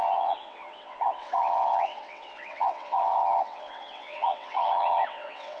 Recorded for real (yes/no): no